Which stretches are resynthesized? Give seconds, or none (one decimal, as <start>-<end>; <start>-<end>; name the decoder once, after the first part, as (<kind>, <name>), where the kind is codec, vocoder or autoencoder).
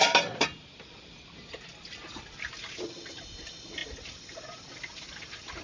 none